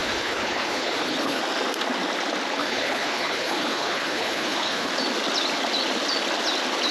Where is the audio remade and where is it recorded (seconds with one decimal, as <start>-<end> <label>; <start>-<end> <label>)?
0.0-1.4 remade; 1.4-2.6 recorded; 2.6-4.9 remade; 4.9-6.9 recorded